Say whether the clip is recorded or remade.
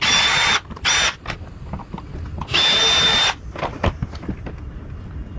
recorded